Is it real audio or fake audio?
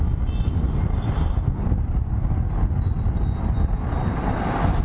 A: real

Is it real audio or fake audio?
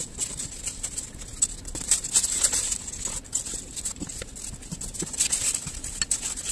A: real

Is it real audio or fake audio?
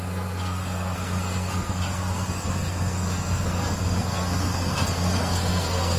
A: fake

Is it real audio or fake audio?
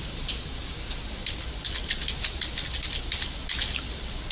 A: real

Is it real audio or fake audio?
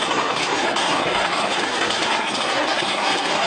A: fake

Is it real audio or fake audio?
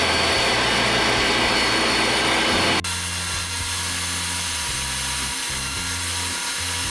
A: real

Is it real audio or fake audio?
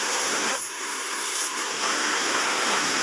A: fake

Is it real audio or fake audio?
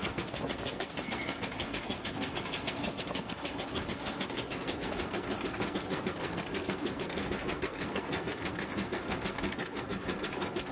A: fake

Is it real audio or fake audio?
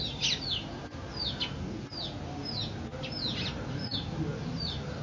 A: real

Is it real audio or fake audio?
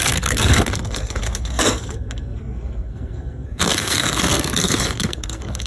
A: fake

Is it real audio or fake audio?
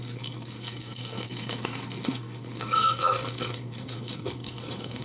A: fake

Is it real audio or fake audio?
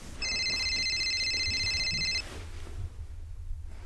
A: real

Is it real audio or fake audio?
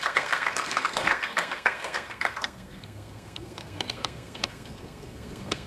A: fake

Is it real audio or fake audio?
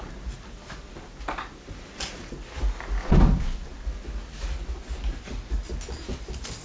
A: real